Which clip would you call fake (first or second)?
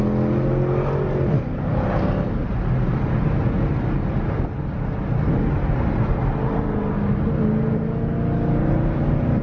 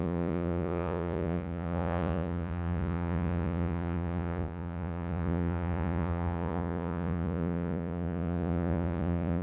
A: second